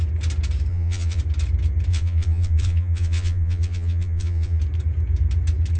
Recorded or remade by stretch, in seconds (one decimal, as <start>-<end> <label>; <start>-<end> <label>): 0.0-0.7 recorded; 0.7-1.2 remade; 1.2-1.9 recorded; 1.9-4.6 remade; 4.6-5.8 recorded

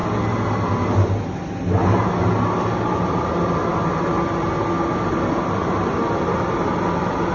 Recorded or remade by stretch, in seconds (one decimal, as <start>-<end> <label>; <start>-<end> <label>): 0.0-7.3 recorded

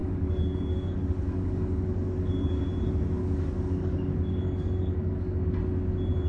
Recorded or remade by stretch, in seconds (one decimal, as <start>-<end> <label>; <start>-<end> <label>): 0.0-2.6 remade; 2.6-3.2 recorded; 3.2-5.4 remade; 5.4-6.3 recorded